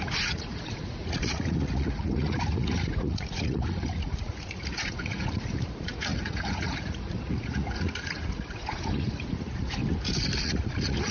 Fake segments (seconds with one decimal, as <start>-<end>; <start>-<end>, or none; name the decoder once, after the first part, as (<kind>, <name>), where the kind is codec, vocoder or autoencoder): 0.0-9.8 (vocoder, Vocos); 10.4-11.1